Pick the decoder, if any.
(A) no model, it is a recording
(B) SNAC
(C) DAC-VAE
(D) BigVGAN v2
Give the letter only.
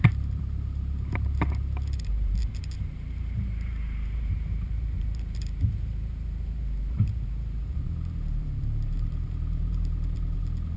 D